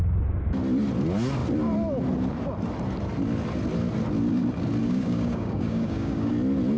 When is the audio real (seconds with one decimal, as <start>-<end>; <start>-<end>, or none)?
0.0-4.8; 6.3-6.8